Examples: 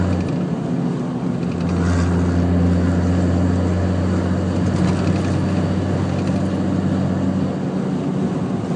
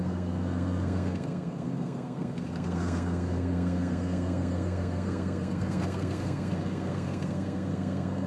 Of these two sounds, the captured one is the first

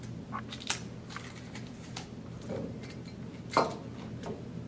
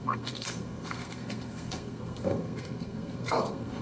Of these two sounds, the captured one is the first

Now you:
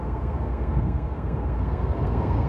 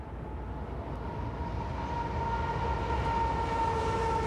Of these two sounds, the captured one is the second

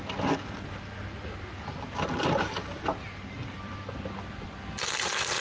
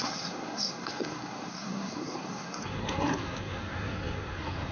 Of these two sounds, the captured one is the first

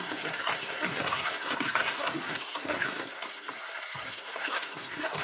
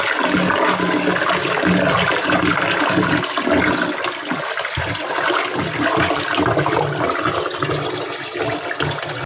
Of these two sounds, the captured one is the second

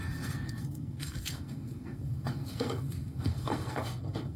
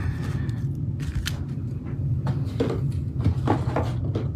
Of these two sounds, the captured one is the second